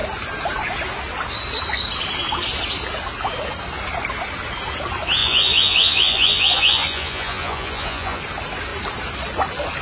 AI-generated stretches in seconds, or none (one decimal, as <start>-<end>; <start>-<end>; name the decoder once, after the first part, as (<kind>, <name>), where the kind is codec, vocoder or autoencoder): 5.2-8.2 (vocoder, Vocos)